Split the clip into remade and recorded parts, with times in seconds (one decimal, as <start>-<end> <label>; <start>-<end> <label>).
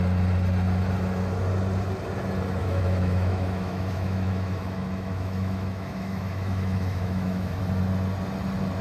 0.0-2.6 recorded; 2.6-7.6 remade; 7.6-8.8 recorded